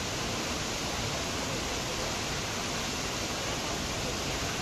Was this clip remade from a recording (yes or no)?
no